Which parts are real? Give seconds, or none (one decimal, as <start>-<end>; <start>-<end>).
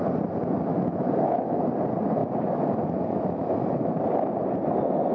0.0-0.7; 1.6-2.2; 4.0-5.1